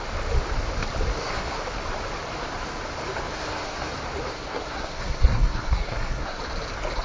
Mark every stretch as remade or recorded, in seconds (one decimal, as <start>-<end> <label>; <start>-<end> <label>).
0.0-1.1 recorded; 1.1-1.6 remade; 1.6-3.3 recorded; 3.3-3.9 remade; 3.9-4.3 recorded; 4.3-6.4 remade; 6.4-7.0 recorded